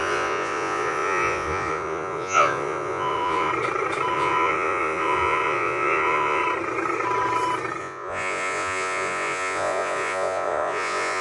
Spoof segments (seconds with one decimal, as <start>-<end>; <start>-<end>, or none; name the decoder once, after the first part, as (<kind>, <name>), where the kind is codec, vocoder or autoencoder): 0.0-3.5 (vocoder, Vocos); 4.1-6.4; 7.8-11.2